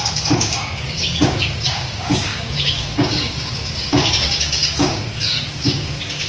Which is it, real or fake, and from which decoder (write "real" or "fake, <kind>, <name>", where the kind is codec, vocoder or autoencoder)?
fake, codec, DAC